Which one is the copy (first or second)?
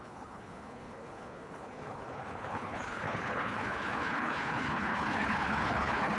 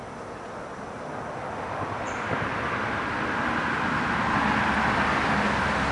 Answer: first